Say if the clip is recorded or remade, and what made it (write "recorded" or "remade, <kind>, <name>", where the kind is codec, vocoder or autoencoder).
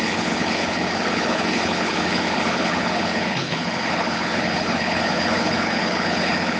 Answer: remade, codec, HILCodec